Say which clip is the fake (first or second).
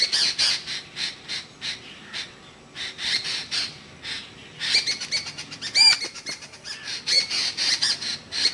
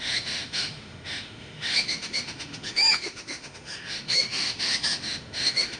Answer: second